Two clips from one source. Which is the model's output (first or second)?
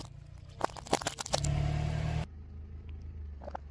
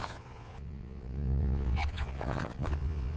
second